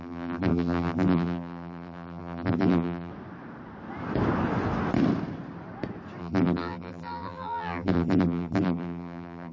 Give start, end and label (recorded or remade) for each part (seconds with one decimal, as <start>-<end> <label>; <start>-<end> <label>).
0.0-3.1 remade; 3.1-6.2 recorded; 6.2-9.5 remade